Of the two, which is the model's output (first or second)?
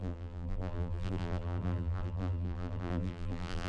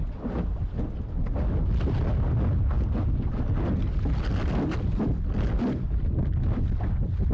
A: first